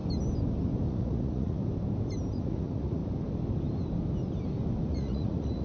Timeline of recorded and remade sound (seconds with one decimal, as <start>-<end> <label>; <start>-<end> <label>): 0.0-0.9 recorded; 0.9-1.6 remade; 1.6-2.3 recorded; 2.3-3.0 remade; 3.0-4.9 recorded; 4.9-5.6 remade